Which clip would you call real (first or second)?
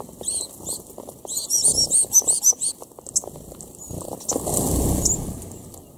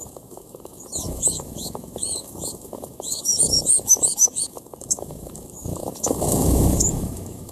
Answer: first